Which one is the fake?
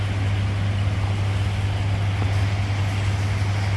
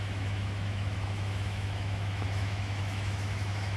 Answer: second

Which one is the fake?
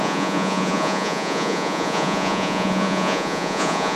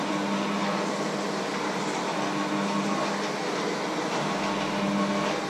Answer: first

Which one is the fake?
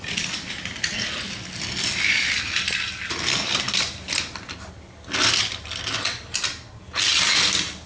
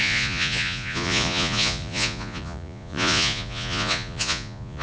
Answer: second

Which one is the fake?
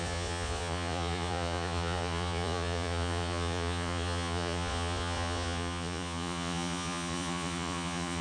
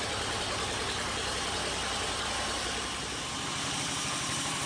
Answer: first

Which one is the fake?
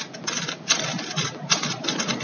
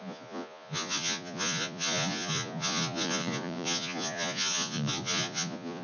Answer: second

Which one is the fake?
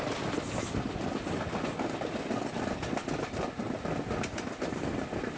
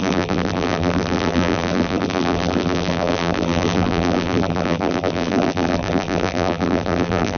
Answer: second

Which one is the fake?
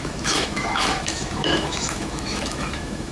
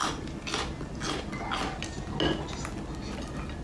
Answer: first